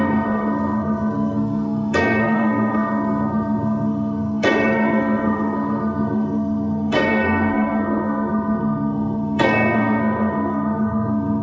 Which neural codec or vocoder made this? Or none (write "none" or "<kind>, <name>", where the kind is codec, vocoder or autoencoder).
codec, SNAC